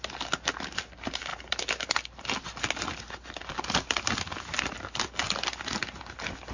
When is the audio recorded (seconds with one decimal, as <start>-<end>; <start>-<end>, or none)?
0.0-6.5